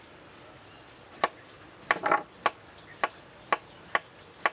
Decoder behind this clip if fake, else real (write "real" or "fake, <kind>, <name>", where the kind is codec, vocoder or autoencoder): real